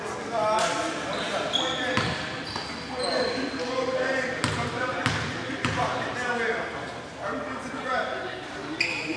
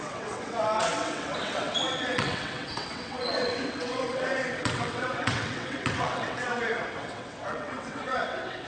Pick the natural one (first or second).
first